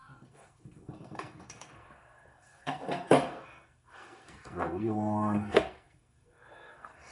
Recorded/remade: remade